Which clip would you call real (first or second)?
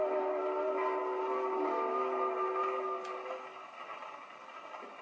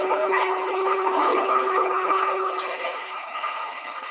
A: first